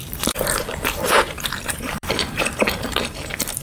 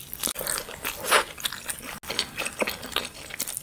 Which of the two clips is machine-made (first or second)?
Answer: first